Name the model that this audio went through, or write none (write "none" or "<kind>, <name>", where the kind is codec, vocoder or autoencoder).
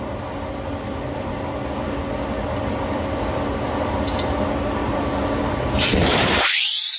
none